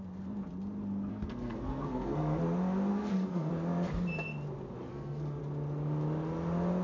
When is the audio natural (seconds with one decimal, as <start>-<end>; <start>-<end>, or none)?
0.0-1.1; 2.4-2.9; 3.5-4.9; 5.4-6.8